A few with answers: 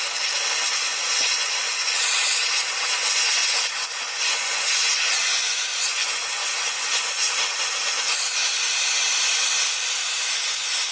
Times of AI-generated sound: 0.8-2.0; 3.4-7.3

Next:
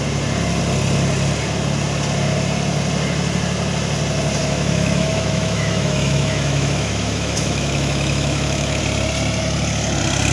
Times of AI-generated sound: 4.4-8.8

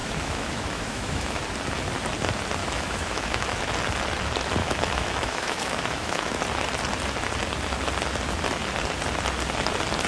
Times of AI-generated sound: 0.0-1.4; 2.6-3.6; 4.6-6.4

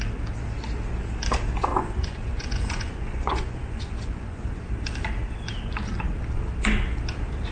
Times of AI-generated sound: 1.7-4.6

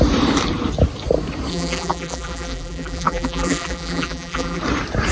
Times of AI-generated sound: 1.5-4.6

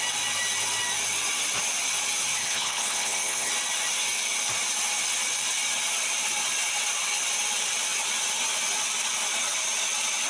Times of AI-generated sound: 2.4-3.5

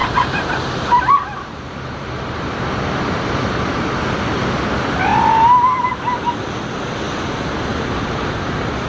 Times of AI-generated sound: 0.0-4.0; 7.7-8.9

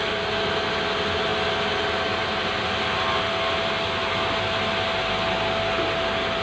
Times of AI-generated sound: none